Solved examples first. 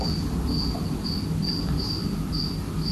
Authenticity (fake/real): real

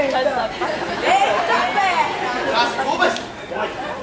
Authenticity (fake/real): real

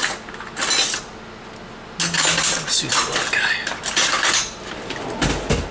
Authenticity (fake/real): real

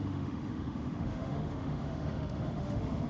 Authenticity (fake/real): fake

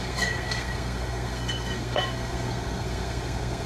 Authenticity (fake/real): fake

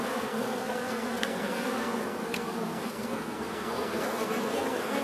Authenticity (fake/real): fake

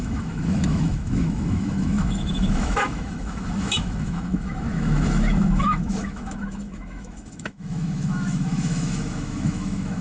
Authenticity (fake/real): fake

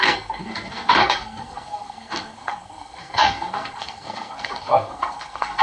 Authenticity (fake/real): fake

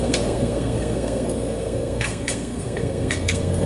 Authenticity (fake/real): fake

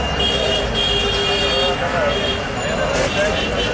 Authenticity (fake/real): real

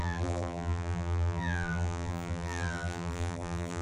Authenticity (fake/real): fake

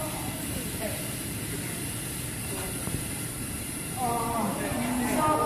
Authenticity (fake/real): fake